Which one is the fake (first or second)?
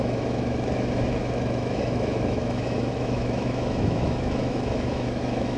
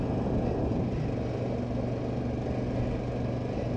first